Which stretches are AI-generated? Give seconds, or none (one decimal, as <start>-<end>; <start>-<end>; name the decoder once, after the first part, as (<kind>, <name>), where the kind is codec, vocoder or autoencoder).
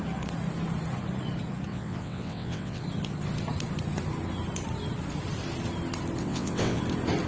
1.7-2.8 (vocoder, WaveNeXt); 6.2-6.8